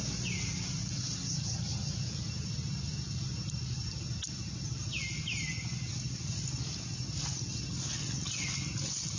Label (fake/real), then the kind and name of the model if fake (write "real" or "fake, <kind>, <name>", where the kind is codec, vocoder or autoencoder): real